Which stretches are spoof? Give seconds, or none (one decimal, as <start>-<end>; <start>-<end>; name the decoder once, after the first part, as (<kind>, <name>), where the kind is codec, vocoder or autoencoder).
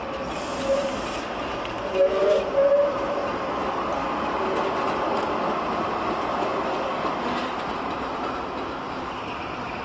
none